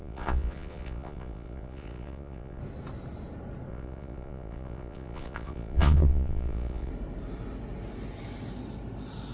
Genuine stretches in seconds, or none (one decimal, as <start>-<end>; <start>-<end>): 2.6-3.7; 6.9-9.3